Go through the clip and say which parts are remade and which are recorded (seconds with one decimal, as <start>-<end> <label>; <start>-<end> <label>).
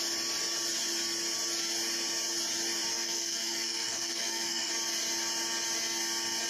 0.0-2.9 recorded; 2.9-4.7 remade; 4.7-6.5 recorded